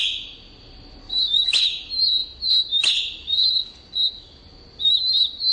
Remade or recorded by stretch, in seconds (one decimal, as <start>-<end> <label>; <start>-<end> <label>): 0.0-1.0 recorded; 1.0-1.6 remade; 1.6-5.5 recorded